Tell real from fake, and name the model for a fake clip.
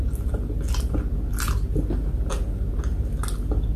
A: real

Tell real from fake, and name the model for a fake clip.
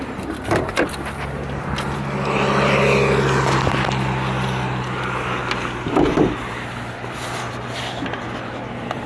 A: real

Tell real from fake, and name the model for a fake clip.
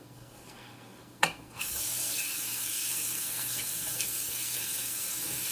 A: fake, codec, SNAC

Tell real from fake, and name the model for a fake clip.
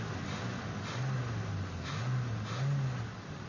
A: real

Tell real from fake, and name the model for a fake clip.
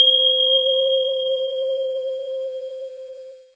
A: fake, vocoder, BigVGAN v2